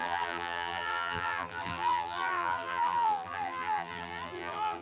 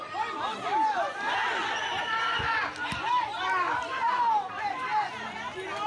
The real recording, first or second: second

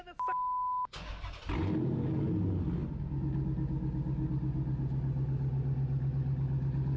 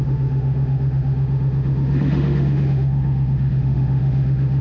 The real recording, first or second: first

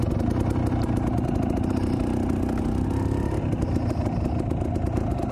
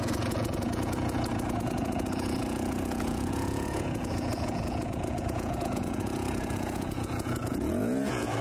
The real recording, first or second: first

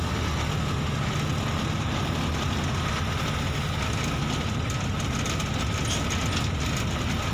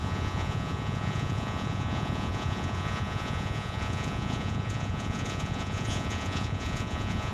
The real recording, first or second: first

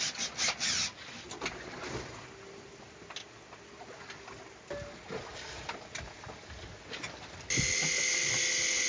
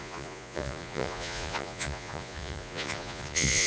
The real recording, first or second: first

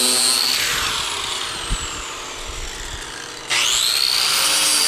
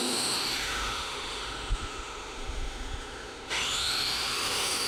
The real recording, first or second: first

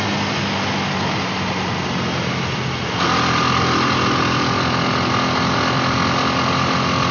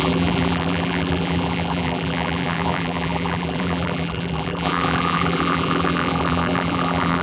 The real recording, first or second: first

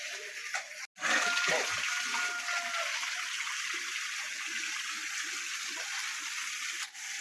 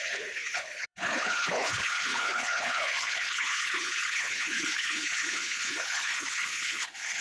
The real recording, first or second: first